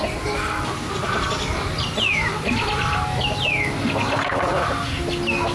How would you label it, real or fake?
real